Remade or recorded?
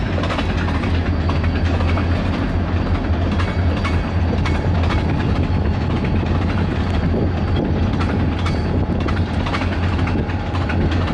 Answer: recorded